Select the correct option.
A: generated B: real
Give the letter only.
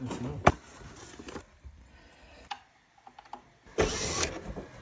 A